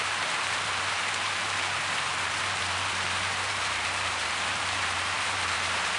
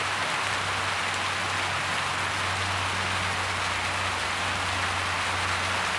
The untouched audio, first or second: second